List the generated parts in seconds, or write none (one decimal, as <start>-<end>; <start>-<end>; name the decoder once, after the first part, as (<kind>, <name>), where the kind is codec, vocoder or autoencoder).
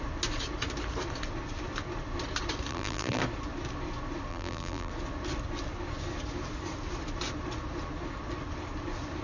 2.7-3.2 (vocoder, BigVGAN v2); 4.3-4.9